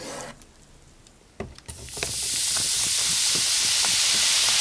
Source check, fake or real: real